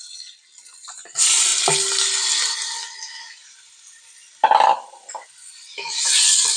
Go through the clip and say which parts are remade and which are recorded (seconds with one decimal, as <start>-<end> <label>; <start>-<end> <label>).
0.0-6.6 recorded